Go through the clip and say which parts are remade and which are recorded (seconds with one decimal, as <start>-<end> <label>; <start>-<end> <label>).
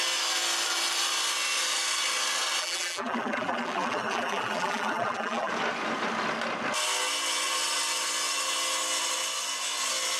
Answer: 0.0-2.6 recorded; 2.6-5.5 remade; 5.5-10.2 recorded